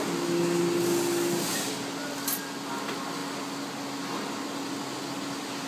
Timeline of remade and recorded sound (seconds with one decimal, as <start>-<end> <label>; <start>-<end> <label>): 0.0-5.7 recorded